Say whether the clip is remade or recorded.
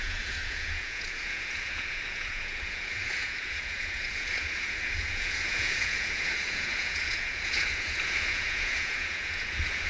remade